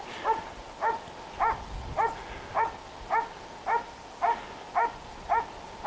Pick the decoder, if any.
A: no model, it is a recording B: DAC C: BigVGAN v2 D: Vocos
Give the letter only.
A